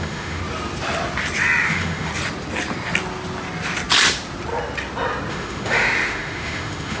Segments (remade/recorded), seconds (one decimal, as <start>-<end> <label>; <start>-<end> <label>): 0.0-0.4 remade; 0.4-1.7 recorded; 1.7-2.1 remade; 2.1-5.3 recorded; 5.3-7.0 remade